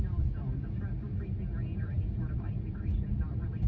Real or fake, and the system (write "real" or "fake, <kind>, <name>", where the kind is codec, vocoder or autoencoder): real